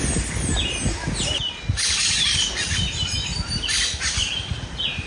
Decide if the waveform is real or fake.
real